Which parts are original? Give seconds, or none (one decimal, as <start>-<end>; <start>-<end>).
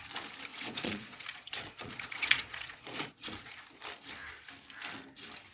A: 0.0-0.5; 3.8-5.5